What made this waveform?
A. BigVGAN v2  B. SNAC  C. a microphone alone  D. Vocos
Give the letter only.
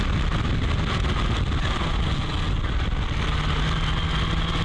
C